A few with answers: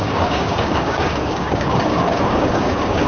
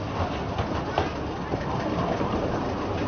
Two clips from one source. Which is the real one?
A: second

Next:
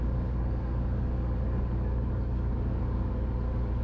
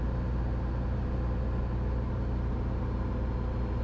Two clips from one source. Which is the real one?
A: second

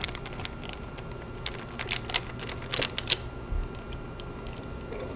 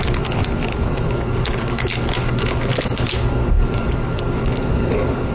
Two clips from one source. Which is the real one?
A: first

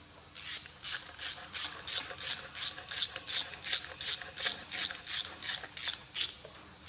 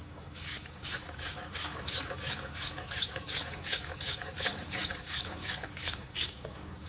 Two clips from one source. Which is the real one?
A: first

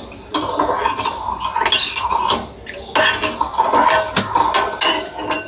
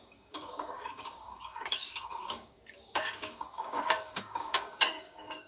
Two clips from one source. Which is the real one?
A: first